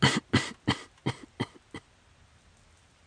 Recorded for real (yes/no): yes